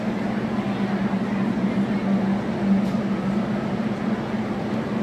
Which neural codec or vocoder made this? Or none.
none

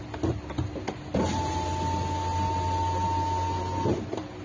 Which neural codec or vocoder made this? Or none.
none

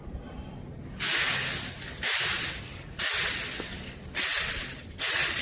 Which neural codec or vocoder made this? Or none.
none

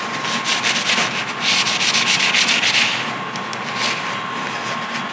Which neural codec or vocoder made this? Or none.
none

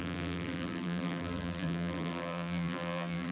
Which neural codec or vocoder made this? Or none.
vocoder, BigVGAN v2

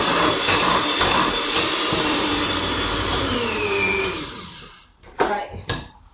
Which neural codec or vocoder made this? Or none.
vocoder, BigVGAN v2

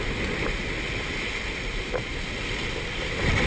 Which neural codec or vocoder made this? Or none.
none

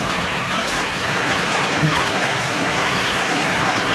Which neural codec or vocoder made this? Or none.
codec, SNAC